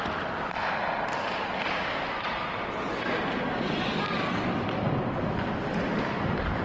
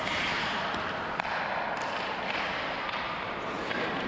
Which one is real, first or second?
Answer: first